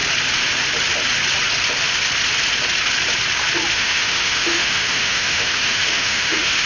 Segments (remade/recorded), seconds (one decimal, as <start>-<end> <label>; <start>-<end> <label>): 0.0-3.7 recorded; 3.7-6.7 remade

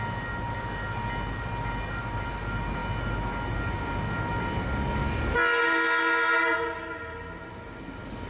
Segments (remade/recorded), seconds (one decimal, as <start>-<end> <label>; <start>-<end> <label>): 0.0-8.3 recorded

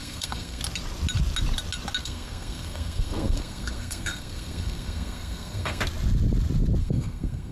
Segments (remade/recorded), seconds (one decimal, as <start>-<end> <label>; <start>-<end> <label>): 0.0-0.6 remade; 0.6-2.0 recorded; 2.0-5.8 remade; 5.8-6.8 recorded; 6.8-7.5 remade

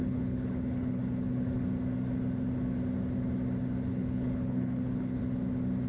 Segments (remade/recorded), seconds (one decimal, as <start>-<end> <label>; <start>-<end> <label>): 0.0-1.6 remade; 1.6-3.9 recorded; 3.9-5.2 remade; 5.2-5.9 recorded

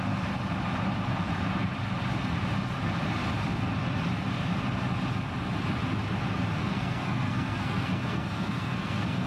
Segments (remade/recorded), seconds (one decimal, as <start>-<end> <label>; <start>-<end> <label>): 0.0-6.6 recorded; 6.6-9.3 remade

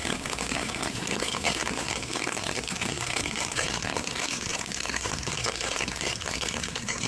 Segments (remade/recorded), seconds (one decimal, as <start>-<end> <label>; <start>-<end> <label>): 0.0-7.1 remade

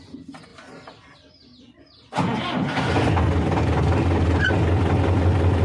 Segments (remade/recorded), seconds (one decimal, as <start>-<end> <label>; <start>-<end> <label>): 0.0-5.6 recorded